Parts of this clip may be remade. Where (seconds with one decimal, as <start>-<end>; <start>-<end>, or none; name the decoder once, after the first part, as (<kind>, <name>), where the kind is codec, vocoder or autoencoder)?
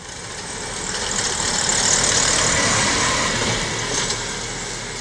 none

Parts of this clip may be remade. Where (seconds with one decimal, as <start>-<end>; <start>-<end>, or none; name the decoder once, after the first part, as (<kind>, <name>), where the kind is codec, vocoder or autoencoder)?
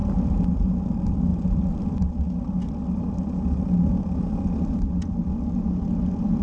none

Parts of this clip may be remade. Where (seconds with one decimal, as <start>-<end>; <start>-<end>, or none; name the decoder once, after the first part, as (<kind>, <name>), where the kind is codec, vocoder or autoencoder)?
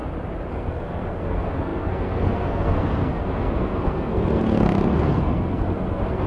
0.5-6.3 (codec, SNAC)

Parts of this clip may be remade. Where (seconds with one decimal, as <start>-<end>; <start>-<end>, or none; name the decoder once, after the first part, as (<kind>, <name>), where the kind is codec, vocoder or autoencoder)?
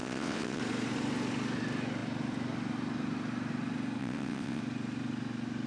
0.0-0.6 (vocoder, WaveNeXt); 4.0-4.6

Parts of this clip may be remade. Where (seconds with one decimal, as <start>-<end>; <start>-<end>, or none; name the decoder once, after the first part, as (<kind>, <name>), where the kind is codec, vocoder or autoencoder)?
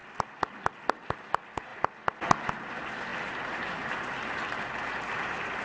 none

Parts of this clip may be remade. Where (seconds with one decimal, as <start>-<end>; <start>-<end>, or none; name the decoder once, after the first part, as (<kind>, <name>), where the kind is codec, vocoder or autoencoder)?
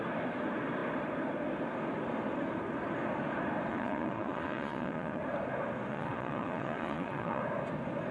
3.7-5.2 (vocoder, Vocos); 5.9-7.4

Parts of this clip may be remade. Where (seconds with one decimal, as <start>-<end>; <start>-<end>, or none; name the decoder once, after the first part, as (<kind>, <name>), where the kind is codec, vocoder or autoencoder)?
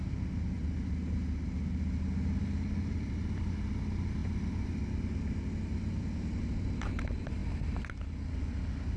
none